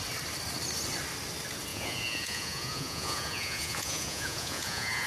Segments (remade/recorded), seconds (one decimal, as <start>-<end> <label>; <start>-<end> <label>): 0.0-1.7 recorded; 1.7-5.1 remade